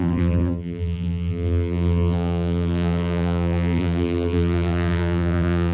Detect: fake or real fake